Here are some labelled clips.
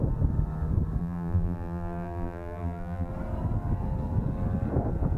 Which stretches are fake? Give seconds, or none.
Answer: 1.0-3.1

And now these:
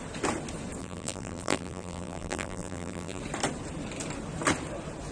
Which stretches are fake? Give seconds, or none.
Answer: 0.8-3.2